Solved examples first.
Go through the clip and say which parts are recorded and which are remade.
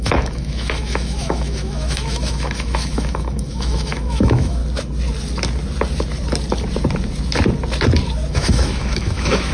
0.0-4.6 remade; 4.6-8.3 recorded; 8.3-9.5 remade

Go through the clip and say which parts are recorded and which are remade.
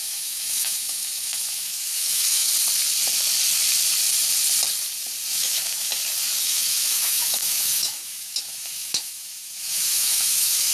0.0-2.5 remade; 2.5-5.3 recorded; 5.3-5.9 remade; 5.9-6.4 recorded; 6.4-10.7 remade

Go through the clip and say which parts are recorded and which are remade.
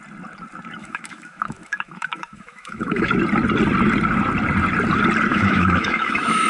0.0-0.8 recorded; 0.8-3.1 remade; 3.1-5.3 recorded; 5.3-6.5 remade